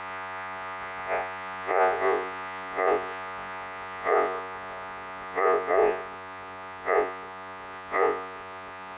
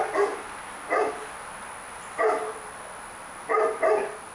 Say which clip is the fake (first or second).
first